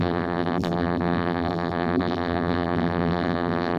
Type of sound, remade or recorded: remade